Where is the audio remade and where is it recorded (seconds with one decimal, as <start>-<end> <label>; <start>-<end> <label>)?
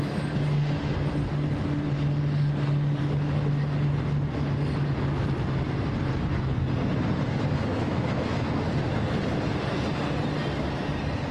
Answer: 0.0-7.7 recorded; 7.7-8.7 remade; 8.7-11.3 recorded